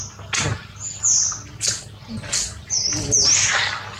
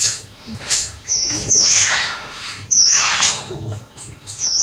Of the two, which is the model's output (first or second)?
second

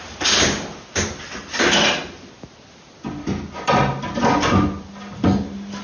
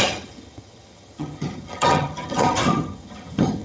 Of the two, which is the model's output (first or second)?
second